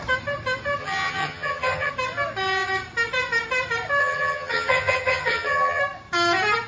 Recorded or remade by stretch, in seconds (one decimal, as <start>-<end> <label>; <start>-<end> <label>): 0.0-0.8 recorded; 0.8-1.9 remade; 1.9-4.0 recorded; 4.0-5.8 remade; 5.8-6.7 recorded